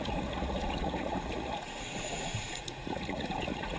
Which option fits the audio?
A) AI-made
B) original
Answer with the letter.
A